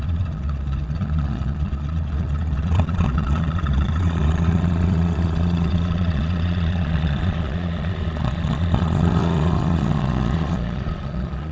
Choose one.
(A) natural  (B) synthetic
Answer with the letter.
B